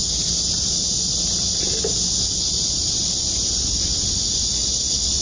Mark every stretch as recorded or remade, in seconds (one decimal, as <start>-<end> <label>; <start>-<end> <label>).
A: 0.0-5.2 recorded